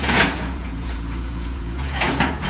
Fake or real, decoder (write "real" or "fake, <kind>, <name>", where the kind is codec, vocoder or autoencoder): fake, vocoder, Vocos